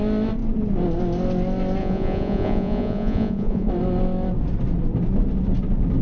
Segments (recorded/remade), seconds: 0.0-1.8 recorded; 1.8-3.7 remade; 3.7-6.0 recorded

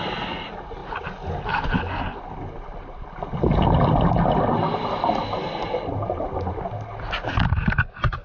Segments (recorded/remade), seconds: 0.0-8.2 recorded

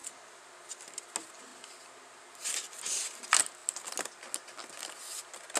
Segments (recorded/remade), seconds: 0.0-5.6 recorded